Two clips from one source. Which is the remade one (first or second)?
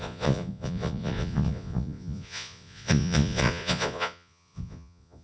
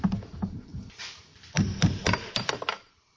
first